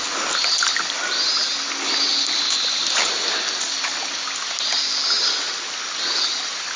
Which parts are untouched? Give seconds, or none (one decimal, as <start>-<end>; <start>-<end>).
0.0-6.8